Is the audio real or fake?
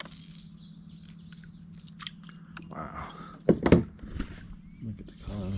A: real